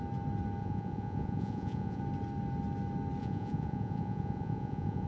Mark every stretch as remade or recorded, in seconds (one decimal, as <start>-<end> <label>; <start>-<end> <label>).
0.0-0.6 recorded; 0.6-2.0 remade; 2.0-3.2 recorded; 3.2-5.1 remade